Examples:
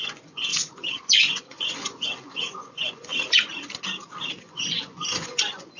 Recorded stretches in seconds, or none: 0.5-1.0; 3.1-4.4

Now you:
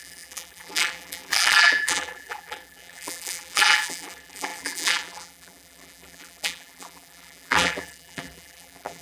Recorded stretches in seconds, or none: none

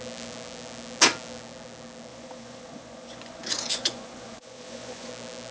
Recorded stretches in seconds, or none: 0.0-2.1; 5.1-5.5

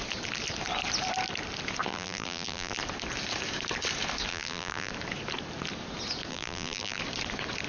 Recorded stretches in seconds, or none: 0.0-1.9; 2.8-4.3; 4.9-6.3; 7.0-7.7